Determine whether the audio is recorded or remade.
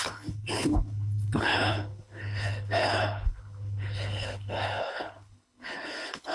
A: remade